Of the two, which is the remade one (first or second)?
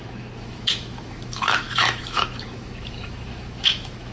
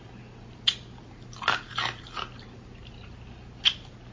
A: first